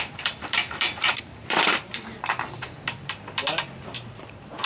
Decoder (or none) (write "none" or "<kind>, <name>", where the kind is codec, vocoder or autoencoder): vocoder, BigVGAN v2